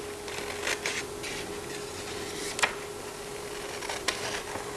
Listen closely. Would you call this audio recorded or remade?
recorded